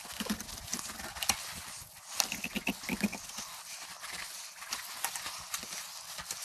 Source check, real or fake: real